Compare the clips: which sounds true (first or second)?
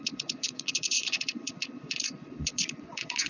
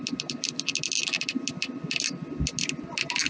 second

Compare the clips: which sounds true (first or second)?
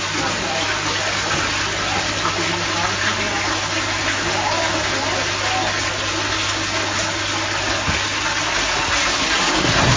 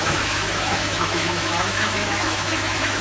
first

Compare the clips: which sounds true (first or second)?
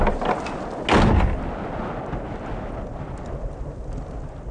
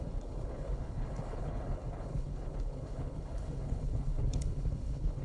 first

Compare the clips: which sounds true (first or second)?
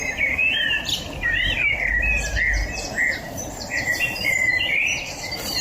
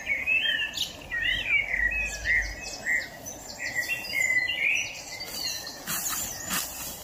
second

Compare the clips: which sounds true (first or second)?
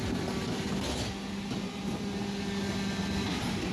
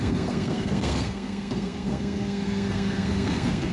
first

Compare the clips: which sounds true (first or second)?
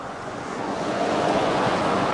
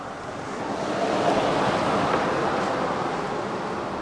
second